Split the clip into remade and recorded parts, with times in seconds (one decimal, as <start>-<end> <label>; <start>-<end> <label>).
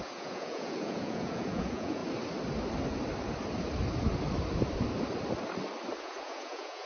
0.0-2.0 remade; 2.0-6.0 recorded; 6.0-6.9 remade